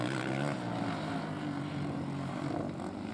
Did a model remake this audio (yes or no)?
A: no